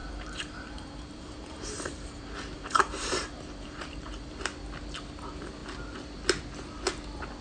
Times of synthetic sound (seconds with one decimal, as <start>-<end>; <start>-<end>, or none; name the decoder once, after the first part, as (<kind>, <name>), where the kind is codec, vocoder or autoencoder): 0.0-4.4 (vocoder, BigVGAN v2)